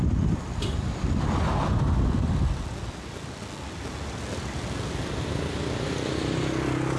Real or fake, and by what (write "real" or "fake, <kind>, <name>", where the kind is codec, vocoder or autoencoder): real